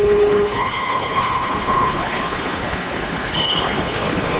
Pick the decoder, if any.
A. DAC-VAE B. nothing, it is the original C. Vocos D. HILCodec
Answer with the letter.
D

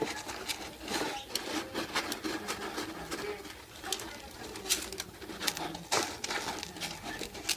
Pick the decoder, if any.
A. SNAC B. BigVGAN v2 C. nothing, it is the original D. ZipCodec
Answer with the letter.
C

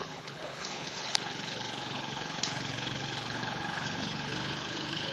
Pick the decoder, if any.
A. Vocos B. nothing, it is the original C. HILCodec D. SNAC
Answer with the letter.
C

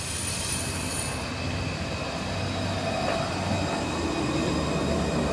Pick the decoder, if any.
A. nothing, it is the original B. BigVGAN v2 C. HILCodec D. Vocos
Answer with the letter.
A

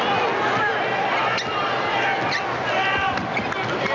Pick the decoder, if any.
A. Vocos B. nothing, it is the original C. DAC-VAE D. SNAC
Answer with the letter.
B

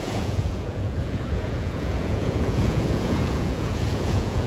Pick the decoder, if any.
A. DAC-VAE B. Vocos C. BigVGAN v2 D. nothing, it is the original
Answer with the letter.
B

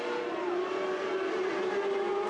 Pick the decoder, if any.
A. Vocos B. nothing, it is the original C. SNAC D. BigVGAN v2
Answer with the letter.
D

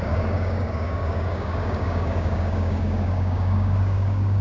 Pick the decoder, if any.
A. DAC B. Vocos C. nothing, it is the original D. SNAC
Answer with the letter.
A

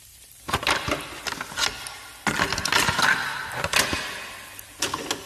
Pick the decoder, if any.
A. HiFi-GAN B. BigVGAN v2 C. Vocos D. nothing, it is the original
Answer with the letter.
D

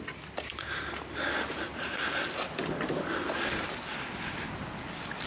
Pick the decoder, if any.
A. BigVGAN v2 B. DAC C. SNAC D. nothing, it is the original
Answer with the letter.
D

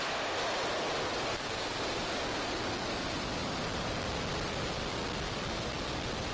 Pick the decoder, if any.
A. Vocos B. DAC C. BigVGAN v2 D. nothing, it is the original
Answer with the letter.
D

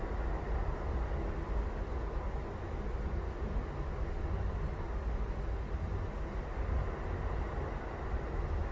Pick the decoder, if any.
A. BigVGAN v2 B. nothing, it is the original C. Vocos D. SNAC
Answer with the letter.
B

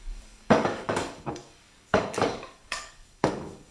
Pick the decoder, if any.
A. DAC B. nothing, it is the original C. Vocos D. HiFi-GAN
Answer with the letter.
A